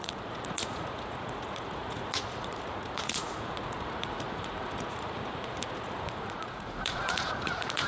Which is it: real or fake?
fake